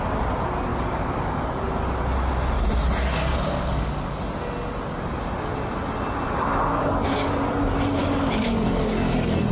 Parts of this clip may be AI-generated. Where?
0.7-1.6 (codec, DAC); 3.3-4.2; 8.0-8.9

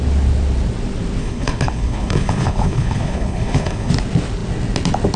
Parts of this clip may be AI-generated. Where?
1.2-3.9 (codec, HILCodec)

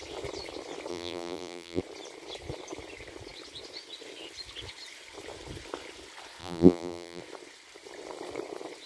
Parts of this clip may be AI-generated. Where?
0.9-1.8 (vocoder, BigVGAN v2); 6.4-7.2

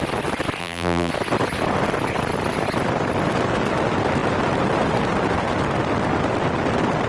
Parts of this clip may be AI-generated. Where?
0.6-1.1 (vocoder, BigVGAN v2)

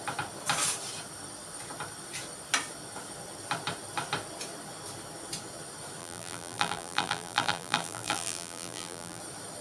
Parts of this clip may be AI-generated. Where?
6.0-9.2 (vocoder, BigVGAN v2)

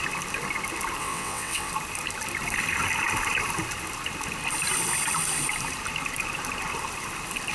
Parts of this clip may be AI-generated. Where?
1.0-1.7 (vocoder, WaveNeXt)

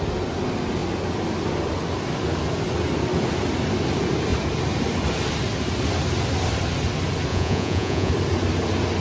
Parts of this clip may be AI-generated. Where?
7.3-8.1 (vocoder, Vocos)

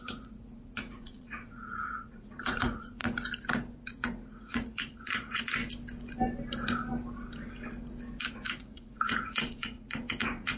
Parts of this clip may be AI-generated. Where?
0.0-3.0 (vocoder, Vocos); 3.9-5.6; 8.2-10.6